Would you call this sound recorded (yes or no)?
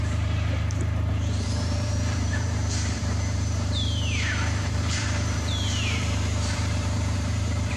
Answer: no